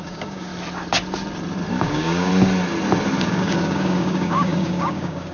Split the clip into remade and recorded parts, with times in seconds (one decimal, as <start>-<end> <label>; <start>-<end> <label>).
0.0-0.5 remade; 0.5-1.7 recorded; 1.7-2.3 remade; 2.3-3.2 recorded; 3.2-5.3 remade